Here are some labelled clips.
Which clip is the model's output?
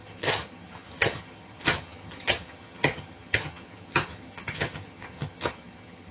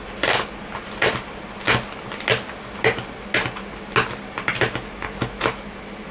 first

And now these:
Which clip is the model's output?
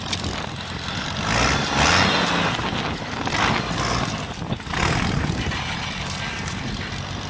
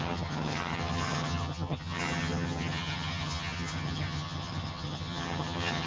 second